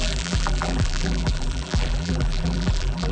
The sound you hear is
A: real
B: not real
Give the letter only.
B